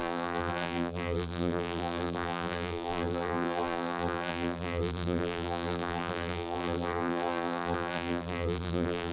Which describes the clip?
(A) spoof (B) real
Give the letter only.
A